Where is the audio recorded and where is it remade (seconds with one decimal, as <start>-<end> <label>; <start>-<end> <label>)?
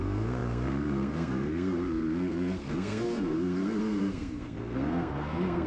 0.0-5.7 remade